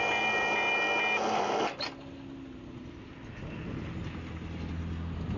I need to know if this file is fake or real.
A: real